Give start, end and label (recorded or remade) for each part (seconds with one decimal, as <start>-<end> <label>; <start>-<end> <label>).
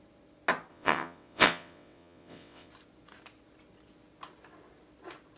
0.0-0.7 recorded; 0.7-2.7 remade; 2.7-5.4 recorded